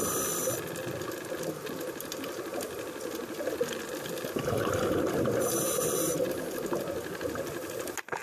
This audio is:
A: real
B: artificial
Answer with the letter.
A